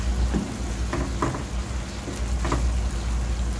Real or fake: real